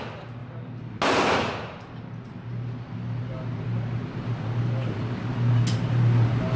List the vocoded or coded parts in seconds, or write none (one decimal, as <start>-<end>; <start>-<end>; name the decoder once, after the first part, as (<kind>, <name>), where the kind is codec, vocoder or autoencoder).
none

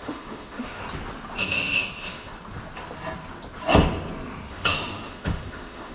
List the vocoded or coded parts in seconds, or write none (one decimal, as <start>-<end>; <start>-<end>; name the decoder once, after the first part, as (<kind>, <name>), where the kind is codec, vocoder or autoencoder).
0.0-0.8 (autoencoder, DAC-VAE); 1.4-2.3; 4.5-5.9

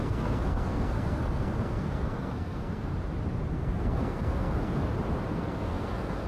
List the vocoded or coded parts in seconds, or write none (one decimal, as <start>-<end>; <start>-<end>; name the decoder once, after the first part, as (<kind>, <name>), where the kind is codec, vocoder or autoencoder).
0.0-2.9 (codec, SNAC); 3.5-4.8; 5.3-6.3

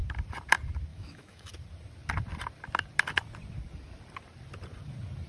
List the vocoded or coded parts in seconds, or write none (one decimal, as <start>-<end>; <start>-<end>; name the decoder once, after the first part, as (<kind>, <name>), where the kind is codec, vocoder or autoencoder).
0.9-1.5 (autoencoder, DAC-VAE)

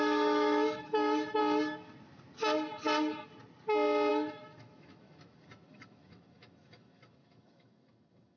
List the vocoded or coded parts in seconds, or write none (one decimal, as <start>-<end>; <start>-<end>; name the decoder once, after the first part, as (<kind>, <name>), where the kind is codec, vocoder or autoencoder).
0.0-1.4 (autoencoder, DAC-VAE); 4.1-8.4

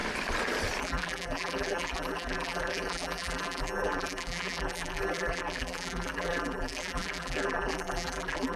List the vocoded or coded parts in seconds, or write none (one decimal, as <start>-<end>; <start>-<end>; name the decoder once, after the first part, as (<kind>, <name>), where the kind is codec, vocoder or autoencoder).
0.8-8.6 (vocoder, BigVGAN v2)